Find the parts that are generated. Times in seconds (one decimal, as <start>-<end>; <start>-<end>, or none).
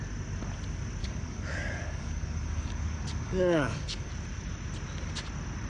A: 1.0-4.1